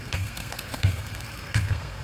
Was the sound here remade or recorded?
remade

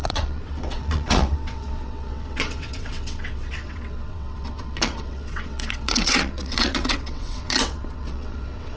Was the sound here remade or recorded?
remade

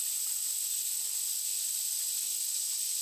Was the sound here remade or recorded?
recorded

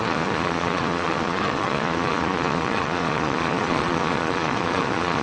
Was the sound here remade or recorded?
remade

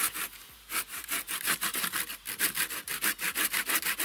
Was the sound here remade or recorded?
recorded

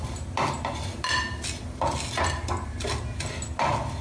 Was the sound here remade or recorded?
recorded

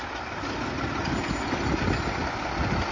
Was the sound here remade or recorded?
recorded